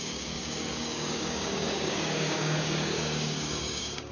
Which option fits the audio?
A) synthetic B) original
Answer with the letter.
A